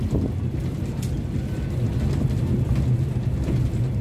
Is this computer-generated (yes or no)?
no